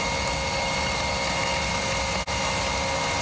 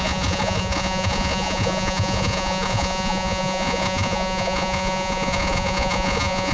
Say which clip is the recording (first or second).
first